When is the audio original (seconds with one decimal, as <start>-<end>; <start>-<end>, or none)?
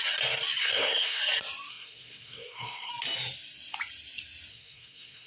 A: 0.0-0.6; 1.2-1.7; 2.9-4.5